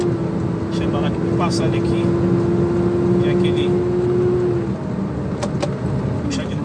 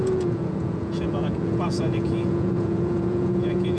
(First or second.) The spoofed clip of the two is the second